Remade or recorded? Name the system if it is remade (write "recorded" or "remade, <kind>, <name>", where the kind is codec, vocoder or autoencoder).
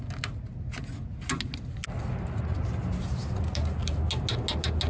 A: recorded